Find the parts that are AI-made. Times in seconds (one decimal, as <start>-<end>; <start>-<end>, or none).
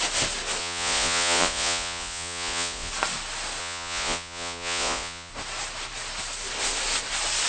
0.6-2.9; 3.6-5.3